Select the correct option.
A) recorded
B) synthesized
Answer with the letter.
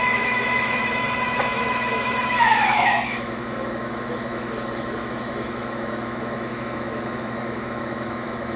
B